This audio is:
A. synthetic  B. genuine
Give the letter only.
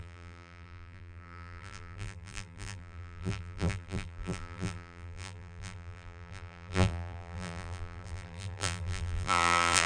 A